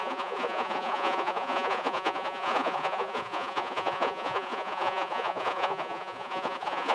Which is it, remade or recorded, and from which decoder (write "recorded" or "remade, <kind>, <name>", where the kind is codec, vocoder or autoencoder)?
remade, vocoder, Vocos